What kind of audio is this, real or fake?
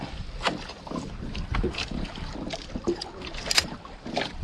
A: fake